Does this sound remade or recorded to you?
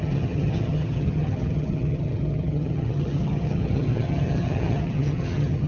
remade